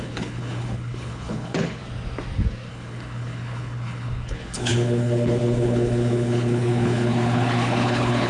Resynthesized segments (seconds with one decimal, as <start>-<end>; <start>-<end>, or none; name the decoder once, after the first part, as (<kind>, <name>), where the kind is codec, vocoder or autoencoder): 0.0-1.8 (codec, HILCodec); 2.7-8.3